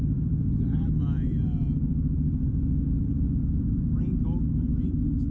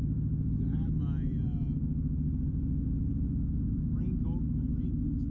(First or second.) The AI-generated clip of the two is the first